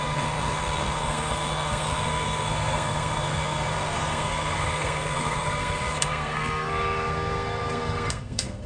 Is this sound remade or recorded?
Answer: remade